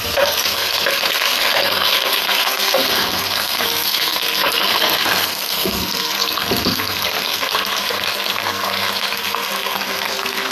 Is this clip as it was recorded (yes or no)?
no